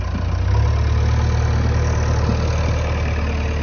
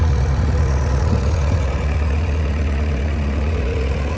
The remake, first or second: second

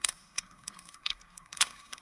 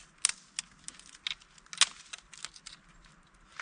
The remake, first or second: first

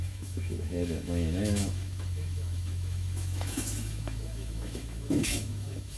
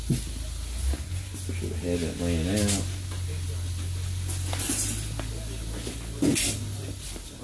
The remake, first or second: first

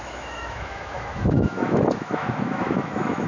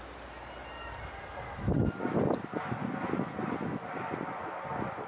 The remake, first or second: first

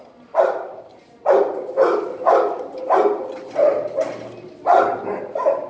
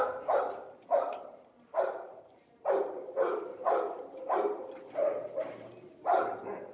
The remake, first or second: second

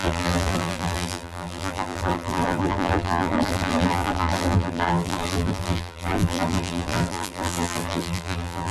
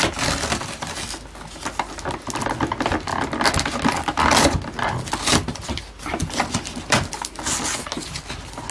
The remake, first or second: first